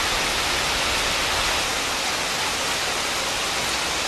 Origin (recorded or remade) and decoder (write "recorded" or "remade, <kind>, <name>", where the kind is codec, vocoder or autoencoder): recorded